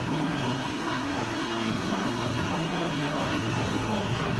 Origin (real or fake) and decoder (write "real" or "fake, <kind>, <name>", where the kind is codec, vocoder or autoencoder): fake, codec, SNAC